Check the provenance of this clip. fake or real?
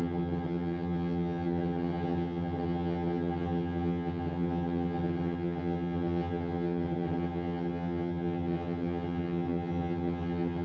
fake